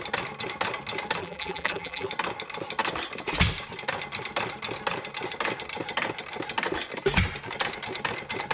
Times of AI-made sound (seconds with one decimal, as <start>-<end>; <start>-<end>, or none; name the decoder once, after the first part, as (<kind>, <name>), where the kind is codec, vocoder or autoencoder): 1.2-2.1 (vocoder, BigVGAN v2)